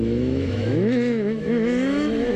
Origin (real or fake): fake